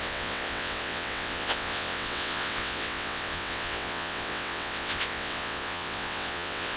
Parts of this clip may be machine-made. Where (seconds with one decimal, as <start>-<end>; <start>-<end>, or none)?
0.0-6.8